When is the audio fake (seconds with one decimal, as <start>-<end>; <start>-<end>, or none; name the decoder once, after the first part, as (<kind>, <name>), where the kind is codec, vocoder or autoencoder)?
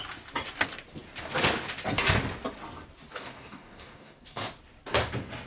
3.1-4.5 (codec, DAC)